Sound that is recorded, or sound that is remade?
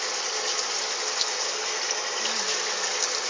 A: recorded